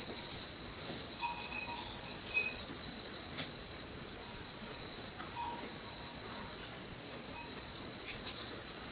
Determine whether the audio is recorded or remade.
remade